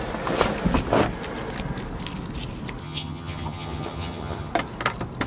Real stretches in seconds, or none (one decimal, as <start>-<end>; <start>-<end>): 0.0-2.8; 4.5-5.3